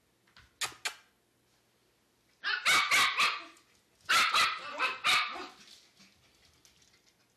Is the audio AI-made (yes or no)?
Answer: no